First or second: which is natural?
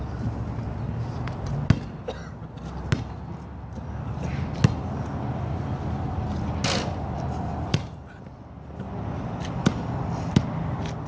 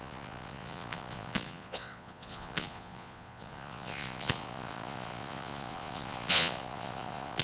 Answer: first